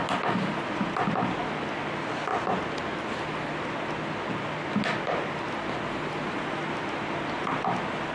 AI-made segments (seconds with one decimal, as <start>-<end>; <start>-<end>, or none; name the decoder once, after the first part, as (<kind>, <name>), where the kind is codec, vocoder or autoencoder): none